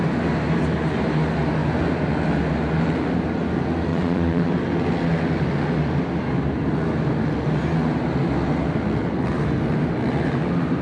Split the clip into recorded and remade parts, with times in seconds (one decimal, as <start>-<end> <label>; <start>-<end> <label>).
0.0-3.9 recorded; 3.9-4.5 remade; 4.5-10.8 recorded